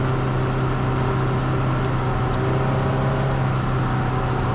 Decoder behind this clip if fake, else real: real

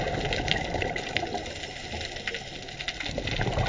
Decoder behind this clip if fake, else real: real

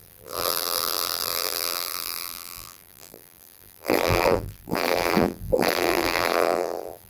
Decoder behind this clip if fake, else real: fake, vocoder, BigVGAN v2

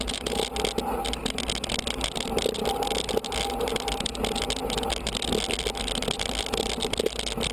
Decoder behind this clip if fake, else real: real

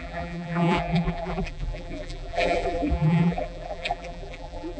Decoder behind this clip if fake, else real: fake, vocoder, BigVGAN v2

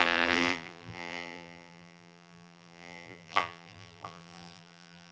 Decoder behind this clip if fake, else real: fake, vocoder, BigVGAN v2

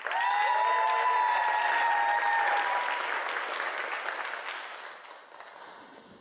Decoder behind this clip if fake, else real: real